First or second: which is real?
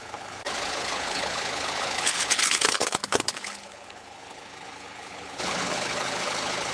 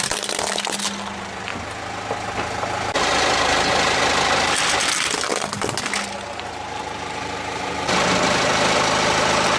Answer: second